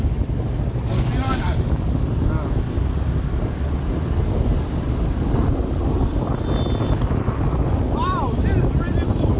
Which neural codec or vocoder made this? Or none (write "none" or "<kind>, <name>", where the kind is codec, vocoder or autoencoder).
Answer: none